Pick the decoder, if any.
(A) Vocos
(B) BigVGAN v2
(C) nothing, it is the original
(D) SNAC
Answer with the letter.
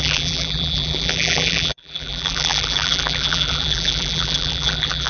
B